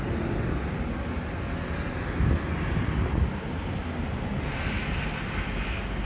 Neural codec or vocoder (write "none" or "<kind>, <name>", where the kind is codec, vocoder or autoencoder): none